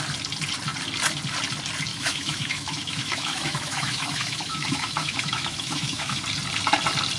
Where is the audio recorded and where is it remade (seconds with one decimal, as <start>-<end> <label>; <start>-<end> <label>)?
0.0-1.9 recorded; 1.9-6.2 remade; 6.2-7.2 recorded